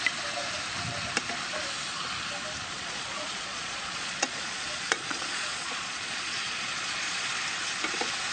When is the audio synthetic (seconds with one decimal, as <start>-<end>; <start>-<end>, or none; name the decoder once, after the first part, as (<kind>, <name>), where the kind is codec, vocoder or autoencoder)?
2.6-7.3 (vocoder, Vocos)